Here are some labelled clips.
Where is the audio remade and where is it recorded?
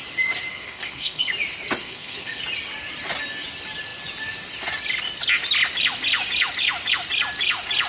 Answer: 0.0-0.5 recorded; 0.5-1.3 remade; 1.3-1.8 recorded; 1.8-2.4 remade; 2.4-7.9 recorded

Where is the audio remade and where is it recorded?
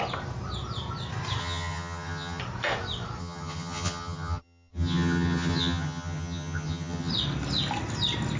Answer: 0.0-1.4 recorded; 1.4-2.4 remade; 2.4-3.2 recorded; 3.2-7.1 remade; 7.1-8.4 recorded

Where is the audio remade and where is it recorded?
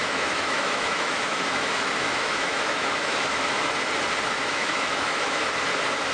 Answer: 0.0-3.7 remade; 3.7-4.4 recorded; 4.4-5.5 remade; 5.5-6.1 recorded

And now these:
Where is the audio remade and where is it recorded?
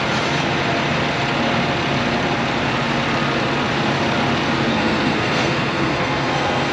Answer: 0.0-4.7 recorded; 4.7-6.7 remade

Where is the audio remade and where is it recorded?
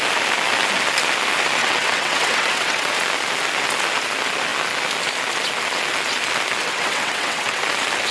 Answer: 0.0-1.6 recorded; 1.6-2.9 remade; 2.9-6.6 recorded; 6.6-7.6 remade; 7.6-8.1 recorded